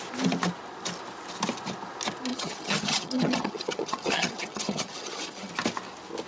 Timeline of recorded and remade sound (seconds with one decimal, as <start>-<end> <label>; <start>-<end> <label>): 0.0-2.3 recorded; 2.3-5.5 remade; 5.5-6.3 recorded